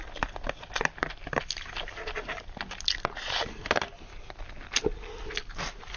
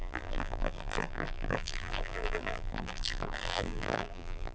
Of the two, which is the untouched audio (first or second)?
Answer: first